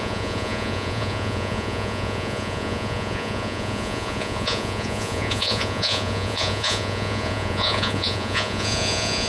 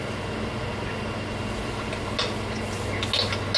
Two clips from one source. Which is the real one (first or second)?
second